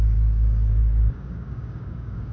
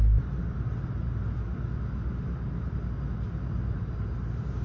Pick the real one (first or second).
second